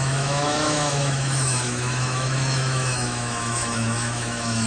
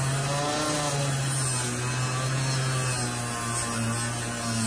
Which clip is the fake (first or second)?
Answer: first